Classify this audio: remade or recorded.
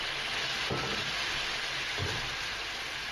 recorded